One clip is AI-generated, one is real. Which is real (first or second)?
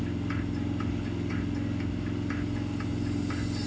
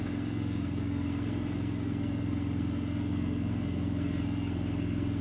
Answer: first